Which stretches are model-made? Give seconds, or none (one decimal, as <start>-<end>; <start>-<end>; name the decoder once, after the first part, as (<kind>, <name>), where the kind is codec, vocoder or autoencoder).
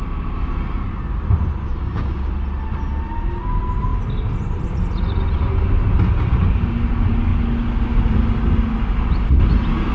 1.7-2.3 (codec, DAC)